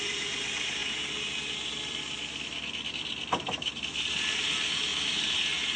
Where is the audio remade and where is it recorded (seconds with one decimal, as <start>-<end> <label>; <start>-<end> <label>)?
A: 0.0-5.8 recorded